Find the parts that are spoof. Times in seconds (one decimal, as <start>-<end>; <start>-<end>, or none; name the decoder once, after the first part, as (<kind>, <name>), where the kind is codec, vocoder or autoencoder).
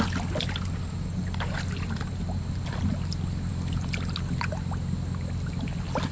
none